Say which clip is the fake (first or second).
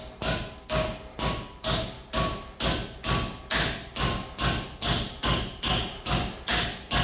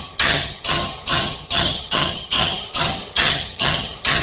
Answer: second